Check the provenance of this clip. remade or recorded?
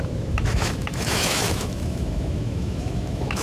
remade